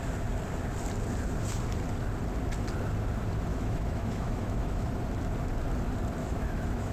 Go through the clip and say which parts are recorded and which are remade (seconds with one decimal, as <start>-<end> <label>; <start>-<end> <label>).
0.0-3.5 recorded; 3.5-4.9 remade; 4.9-6.2 recorded; 6.2-6.9 remade